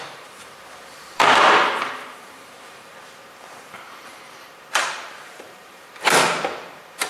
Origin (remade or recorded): remade